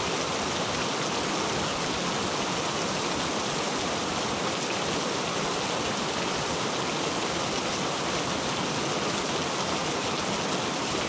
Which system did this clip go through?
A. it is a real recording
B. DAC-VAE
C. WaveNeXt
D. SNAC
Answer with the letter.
A